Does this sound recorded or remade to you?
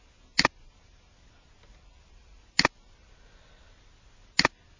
recorded